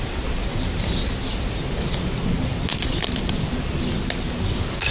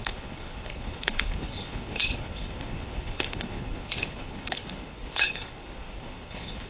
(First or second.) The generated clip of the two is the second